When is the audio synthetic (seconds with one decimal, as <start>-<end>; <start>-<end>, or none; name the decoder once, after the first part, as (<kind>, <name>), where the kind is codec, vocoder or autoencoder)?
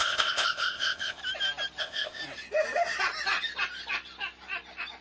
0.0-1.2 (codec, ZipCodec); 1.8-2.2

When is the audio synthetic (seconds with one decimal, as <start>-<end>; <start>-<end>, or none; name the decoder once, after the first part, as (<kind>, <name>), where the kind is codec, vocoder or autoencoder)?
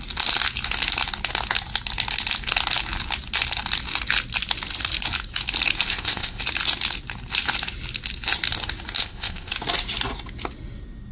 5.9-6.4 (codec, ZipCodec); 9.0-9.5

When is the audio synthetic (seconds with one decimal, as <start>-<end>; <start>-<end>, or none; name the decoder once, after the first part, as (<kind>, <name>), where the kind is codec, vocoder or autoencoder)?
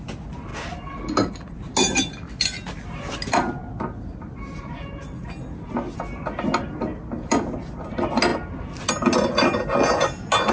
none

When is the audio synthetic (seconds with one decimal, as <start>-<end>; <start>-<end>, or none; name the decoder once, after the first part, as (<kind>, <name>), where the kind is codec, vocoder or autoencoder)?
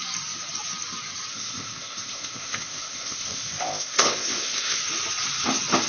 1.3-4.8 (codec, ZipCodec)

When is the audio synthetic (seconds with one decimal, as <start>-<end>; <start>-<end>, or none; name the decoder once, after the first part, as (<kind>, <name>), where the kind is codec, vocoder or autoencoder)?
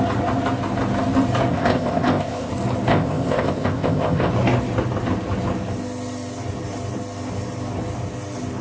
1.5-2.5 (codec, ZipCodec); 2.9-4.3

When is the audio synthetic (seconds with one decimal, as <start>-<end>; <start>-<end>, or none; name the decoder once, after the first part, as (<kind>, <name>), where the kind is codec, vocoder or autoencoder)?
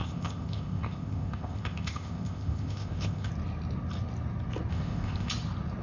0.0-3.3 (codec, ZipCodec); 4.7-5.3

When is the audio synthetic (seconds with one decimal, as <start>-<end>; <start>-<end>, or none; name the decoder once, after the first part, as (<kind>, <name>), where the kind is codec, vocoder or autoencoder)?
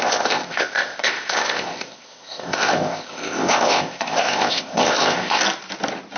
0.0-5.4 (codec, ZipCodec)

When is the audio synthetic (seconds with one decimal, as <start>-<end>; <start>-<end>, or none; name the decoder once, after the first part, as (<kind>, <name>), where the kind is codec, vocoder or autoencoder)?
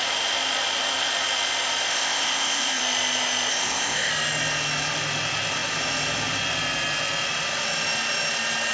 1.9-2.8 (codec, ZipCodec); 3.5-4.1